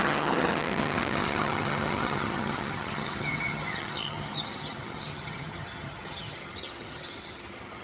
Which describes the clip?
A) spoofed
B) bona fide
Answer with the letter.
A